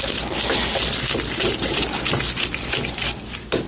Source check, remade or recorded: recorded